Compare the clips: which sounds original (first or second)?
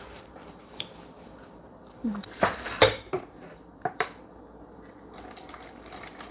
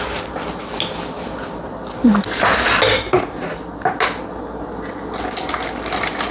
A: second